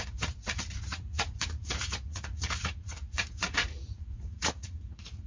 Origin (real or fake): fake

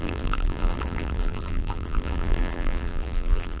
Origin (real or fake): fake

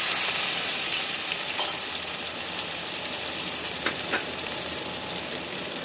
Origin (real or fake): fake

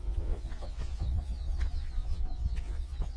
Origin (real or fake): fake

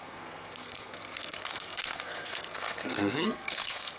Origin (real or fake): fake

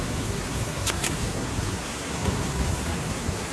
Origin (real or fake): fake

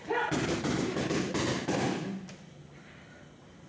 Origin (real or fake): real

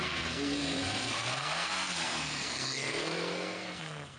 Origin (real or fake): fake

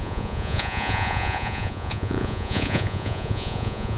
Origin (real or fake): fake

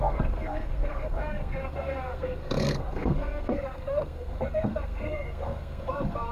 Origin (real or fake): fake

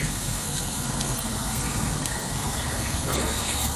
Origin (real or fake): fake